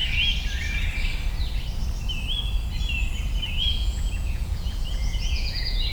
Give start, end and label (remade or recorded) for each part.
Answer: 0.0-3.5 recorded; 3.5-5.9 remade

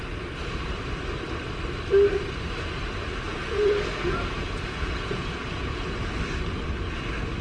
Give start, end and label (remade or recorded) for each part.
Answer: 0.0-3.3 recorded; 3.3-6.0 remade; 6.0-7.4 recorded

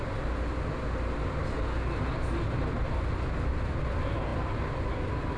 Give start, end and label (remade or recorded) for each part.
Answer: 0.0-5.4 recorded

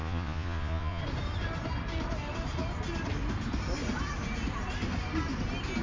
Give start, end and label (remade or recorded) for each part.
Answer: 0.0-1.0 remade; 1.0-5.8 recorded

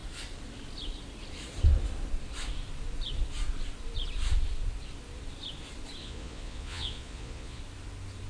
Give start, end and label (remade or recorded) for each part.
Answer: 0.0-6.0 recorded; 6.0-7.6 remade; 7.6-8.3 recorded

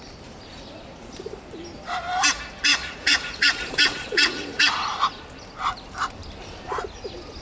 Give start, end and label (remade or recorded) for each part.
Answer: 0.0-2.7 recorded; 2.7-4.7 remade; 4.7-7.4 recorded

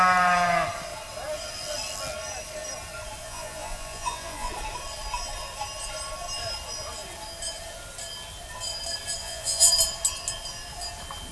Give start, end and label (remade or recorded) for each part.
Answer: 0.0-3.2 recorded; 3.2-4.5 remade; 4.5-9.2 recorded; 9.2-9.7 remade; 9.7-11.3 recorded

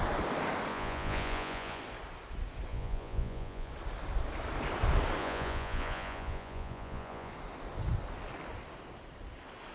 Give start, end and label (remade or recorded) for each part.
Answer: 0.0-0.7 recorded; 0.7-1.8 remade; 1.8-2.7 recorded; 2.7-3.7 remade; 3.7-5.2 recorded; 5.2-7.3 remade; 7.3-9.7 recorded